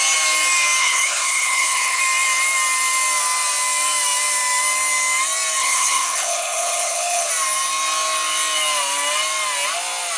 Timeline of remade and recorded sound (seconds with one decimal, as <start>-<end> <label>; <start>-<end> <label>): 0.0-0.8 recorded; 0.8-2.0 remade; 2.0-5.6 recorded; 5.6-7.3 remade; 7.3-10.2 recorded

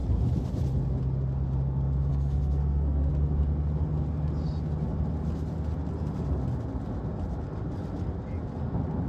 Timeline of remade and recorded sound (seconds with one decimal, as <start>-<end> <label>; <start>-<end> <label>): 0.0-2.1 recorded; 2.1-3.1 remade; 3.1-9.1 recorded